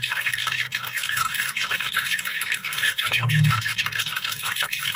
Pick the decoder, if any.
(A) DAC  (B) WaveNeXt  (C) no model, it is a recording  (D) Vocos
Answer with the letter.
A